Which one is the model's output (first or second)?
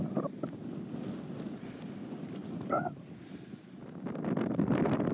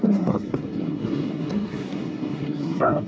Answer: second